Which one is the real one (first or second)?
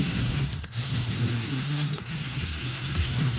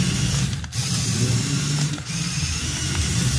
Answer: second